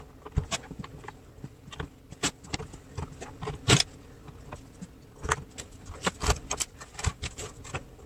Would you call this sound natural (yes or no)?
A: yes